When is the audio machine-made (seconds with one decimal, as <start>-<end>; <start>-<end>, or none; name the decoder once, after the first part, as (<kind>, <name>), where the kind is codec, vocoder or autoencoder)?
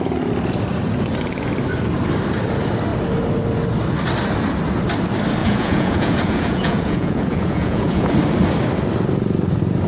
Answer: 5.4-8.1 (vocoder, Vocos)